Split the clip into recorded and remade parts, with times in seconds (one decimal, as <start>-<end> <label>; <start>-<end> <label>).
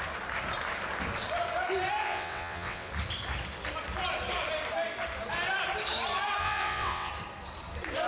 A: 0.0-2.0 recorded; 2.0-2.9 remade; 2.9-6.4 recorded; 6.4-7.1 remade; 7.1-8.1 recorded